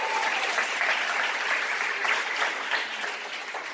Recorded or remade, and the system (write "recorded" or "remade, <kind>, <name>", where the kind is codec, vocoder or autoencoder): recorded